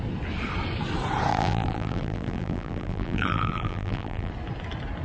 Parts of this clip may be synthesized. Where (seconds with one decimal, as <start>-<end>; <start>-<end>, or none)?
1.3-4.3